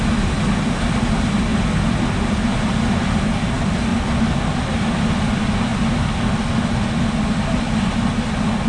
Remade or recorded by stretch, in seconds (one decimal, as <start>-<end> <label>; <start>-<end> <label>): 0.0-1.5 recorded; 1.5-3.3 remade; 3.3-8.7 recorded